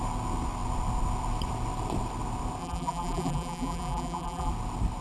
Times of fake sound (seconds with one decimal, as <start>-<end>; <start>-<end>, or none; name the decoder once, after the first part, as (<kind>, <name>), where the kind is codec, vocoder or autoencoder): 2.6-4.5 (vocoder, BigVGAN v2)